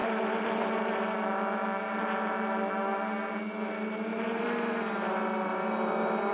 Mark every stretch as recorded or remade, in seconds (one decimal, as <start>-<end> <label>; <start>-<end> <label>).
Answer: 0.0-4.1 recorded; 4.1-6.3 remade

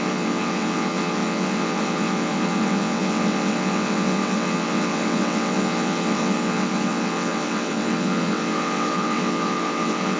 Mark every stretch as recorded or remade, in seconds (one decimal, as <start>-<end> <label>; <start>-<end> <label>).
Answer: 0.0-10.2 remade

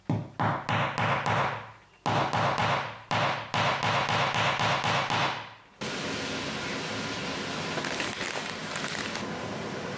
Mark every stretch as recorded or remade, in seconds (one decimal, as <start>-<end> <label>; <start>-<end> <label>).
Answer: 0.0-10.0 recorded

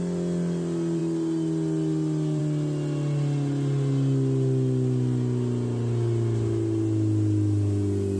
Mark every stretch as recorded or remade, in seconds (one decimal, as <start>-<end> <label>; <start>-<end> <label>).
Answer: 0.0-8.2 recorded